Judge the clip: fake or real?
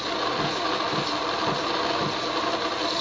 real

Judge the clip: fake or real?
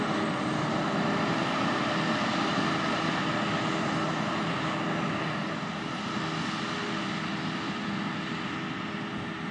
real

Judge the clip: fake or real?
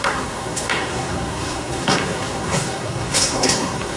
fake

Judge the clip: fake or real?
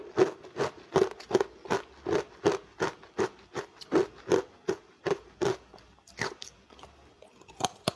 real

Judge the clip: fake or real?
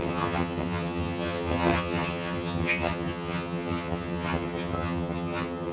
fake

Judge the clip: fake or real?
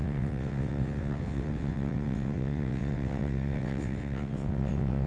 fake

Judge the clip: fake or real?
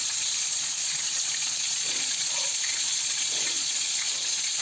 fake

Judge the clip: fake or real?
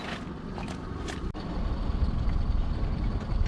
real